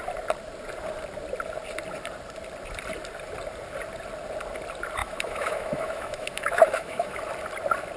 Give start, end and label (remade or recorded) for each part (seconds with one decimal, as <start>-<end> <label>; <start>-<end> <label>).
0.0-5.0 recorded; 5.0-7.2 remade; 7.2-8.0 recorded